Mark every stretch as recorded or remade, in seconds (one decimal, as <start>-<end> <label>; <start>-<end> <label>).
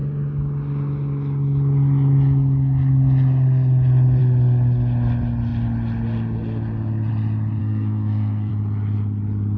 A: 0.0-7.6 recorded; 7.6-8.5 remade; 8.5-9.6 recorded